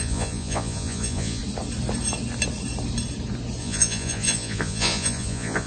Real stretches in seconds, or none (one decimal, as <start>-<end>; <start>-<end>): 1.4-3.6